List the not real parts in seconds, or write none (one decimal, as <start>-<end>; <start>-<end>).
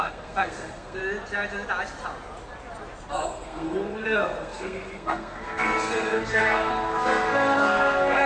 0.0-1.0; 3.1-8.3